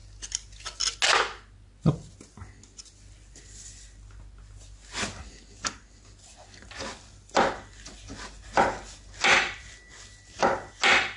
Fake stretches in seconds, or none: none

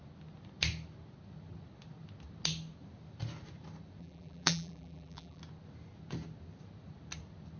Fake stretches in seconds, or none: 4.0-5.4 (vocoder, BigVGAN v2)